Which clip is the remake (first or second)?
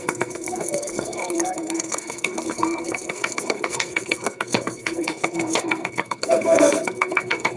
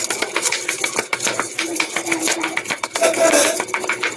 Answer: first